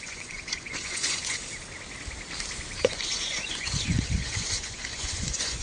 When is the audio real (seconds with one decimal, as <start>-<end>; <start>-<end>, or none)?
1.4-2.8